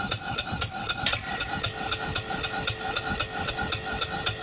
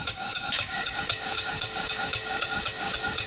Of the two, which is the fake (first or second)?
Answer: second